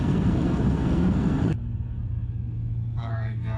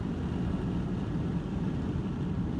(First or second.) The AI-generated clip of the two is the first